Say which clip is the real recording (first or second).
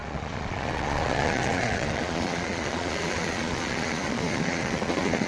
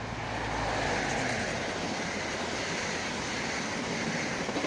second